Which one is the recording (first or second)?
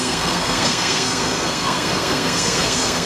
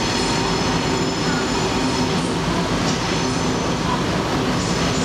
second